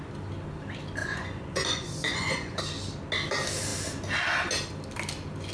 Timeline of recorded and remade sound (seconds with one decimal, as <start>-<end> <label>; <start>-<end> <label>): 0.0-1.0 recorded; 1.0-2.6 remade; 2.6-5.5 recorded